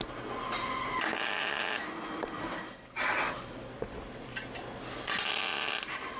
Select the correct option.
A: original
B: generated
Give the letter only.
A